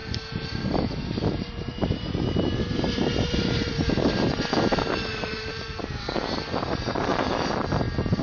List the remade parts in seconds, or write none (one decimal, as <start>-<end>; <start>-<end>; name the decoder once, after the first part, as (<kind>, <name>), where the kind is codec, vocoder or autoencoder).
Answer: 0.0-7.1 (vocoder, BigVGAN v2)